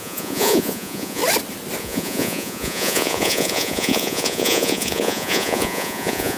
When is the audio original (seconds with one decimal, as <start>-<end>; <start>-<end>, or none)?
1.2-1.8